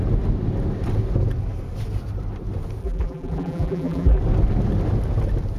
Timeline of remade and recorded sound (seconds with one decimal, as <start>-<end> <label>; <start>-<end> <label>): 0.0-2.8 recorded; 2.8-4.2 remade; 4.2-5.6 recorded